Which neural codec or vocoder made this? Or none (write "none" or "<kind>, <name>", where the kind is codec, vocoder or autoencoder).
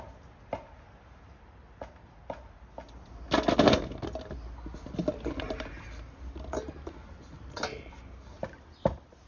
none